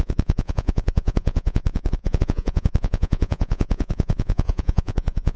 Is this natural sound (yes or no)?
no